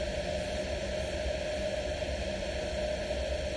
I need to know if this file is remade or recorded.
recorded